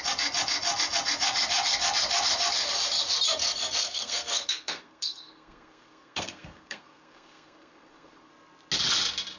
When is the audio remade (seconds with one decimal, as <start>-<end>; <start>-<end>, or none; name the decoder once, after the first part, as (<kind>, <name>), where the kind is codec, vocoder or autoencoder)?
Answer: 3.8-8.3 (codec, SNAC)